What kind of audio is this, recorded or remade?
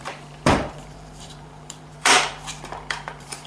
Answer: remade